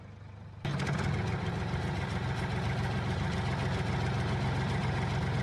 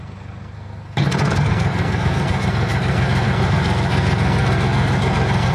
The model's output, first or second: second